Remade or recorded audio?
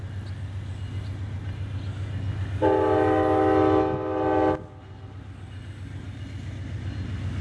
recorded